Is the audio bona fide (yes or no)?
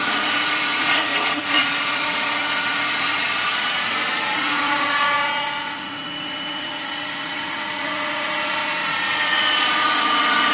no